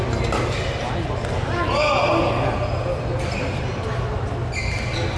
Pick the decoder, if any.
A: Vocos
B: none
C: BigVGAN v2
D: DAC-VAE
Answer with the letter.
B